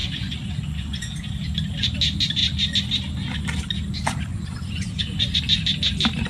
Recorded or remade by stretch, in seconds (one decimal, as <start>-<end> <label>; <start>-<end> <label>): 0.0-1.3 remade; 1.3-4.3 recorded; 4.3-5.4 remade; 5.4-6.3 recorded